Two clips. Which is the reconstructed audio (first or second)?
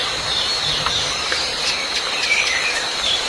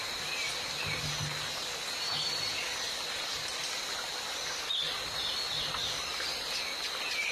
first